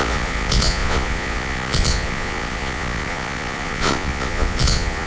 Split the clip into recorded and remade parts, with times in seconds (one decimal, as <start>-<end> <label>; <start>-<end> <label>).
0.0-5.1 remade